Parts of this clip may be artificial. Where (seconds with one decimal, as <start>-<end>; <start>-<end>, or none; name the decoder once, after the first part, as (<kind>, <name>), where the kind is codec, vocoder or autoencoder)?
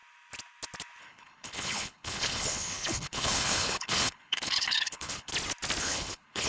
1.0-5.3 (codec, HILCodec); 5.8-6.5